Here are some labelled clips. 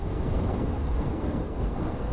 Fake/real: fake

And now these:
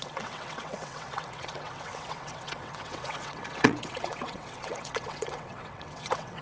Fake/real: fake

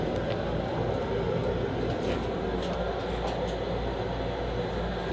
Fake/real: real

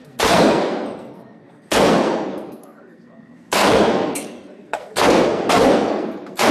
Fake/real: fake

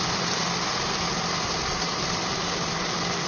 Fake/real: real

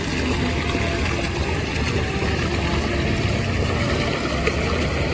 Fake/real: real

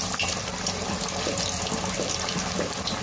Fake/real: real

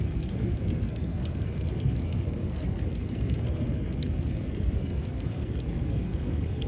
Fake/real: fake